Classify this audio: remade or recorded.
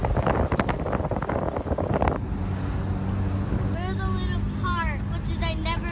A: recorded